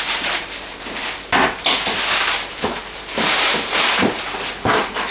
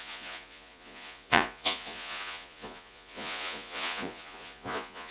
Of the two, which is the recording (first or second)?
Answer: first